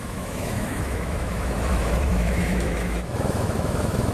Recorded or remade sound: remade